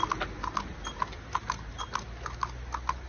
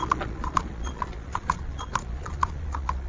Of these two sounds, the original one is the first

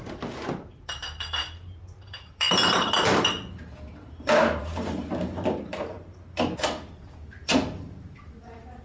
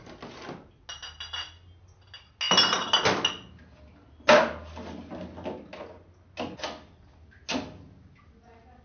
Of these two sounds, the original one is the second